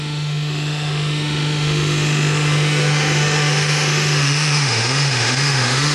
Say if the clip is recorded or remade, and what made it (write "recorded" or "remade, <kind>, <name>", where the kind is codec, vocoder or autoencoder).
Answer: remade, autoencoder, DAC-VAE